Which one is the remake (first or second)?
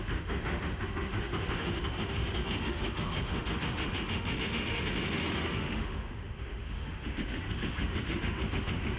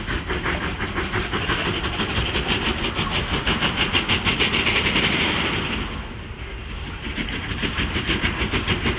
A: first